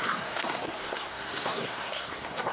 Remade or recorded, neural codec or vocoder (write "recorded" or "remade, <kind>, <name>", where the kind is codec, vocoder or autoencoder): remade, codec, SNAC